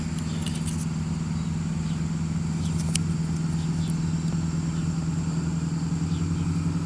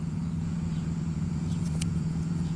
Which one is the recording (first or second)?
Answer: first